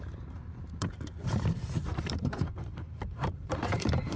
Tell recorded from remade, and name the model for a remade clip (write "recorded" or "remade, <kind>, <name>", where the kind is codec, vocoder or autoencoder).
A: remade, vocoder, BigVGAN v2